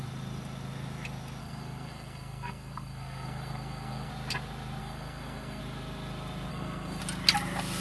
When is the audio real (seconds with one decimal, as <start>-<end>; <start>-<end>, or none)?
0.0-1.4; 4.1-4.8; 5.6-6.5; 7.0-7.8